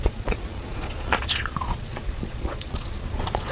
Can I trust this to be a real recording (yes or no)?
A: no